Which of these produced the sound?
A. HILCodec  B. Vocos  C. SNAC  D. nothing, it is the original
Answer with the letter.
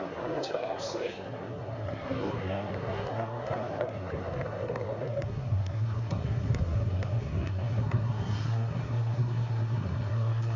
C